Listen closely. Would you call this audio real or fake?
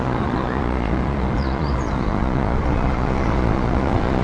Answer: fake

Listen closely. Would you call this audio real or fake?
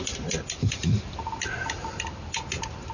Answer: real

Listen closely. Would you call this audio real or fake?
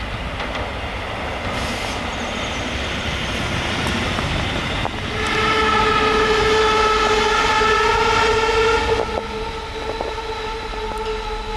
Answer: real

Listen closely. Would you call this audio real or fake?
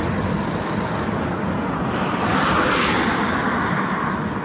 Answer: real